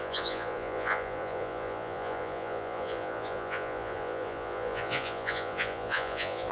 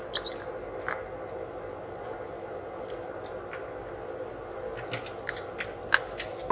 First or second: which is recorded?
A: second